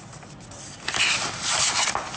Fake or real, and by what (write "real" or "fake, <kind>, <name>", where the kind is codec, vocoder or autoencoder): real